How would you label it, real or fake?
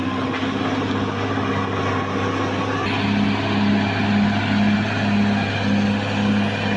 real